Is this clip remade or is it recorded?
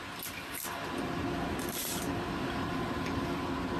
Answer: recorded